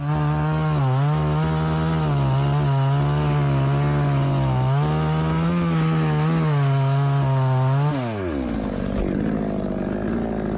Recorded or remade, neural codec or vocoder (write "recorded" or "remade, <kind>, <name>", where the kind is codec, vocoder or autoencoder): recorded